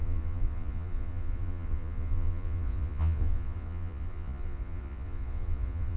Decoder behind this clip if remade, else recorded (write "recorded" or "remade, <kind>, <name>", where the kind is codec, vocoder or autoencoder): remade, vocoder, Vocos